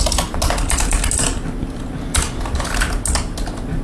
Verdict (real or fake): real